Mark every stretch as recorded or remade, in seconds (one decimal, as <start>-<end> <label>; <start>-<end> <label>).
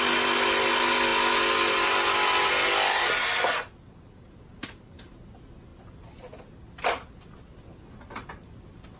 0.0-9.0 recorded